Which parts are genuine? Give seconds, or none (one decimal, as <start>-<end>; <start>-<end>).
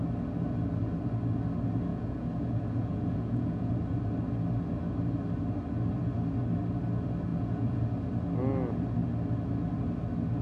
0.0-1.9; 3.7-7.3; 7.8-10.4